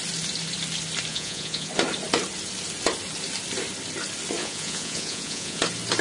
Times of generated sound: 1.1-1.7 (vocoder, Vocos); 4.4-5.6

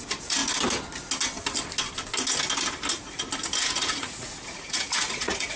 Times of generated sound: 0.0-0.4 (vocoder, Vocos); 3.7-5.6

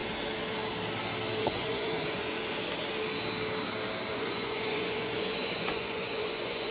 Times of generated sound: 1.4-2.4 (vocoder, Vocos); 4.1-6.7

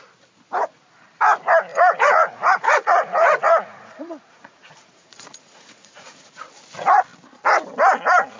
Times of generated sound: 1.7-6.4 (vocoder, Vocos)